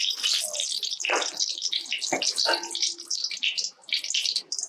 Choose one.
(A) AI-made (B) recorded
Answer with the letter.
B